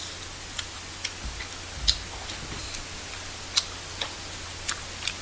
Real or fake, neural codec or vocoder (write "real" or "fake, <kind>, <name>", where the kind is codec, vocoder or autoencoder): real